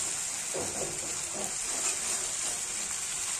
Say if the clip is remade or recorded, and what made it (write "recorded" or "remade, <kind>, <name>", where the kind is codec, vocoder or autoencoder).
recorded